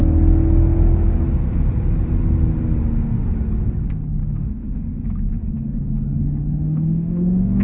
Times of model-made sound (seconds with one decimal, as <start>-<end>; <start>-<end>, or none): 4.2-5.0; 5.4-7.6